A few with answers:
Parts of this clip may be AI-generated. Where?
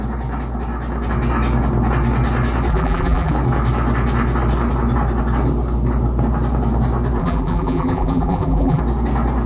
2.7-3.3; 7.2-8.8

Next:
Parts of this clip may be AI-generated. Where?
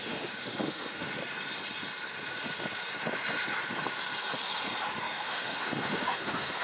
0.0-1.2; 5.0-6.6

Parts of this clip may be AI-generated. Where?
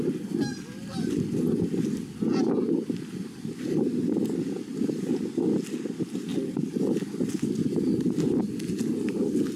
none